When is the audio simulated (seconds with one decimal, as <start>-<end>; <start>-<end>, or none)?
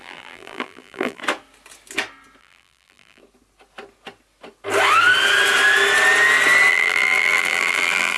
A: 0.0-1.2; 2.4-3.2; 6.7-8.2